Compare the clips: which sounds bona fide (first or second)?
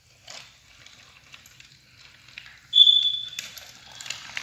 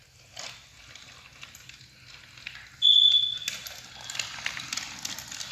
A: second